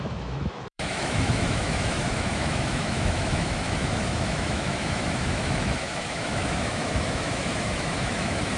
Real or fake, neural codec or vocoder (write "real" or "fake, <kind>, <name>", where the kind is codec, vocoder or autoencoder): fake, autoencoder, DAC-VAE